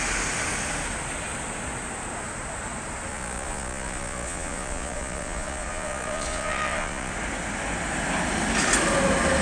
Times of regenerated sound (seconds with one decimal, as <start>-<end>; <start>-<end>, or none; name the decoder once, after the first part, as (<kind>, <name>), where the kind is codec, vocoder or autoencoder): 3.1-7.1 (vocoder, Vocos)